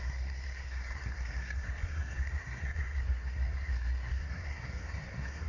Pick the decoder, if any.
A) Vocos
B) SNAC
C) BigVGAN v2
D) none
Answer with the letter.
B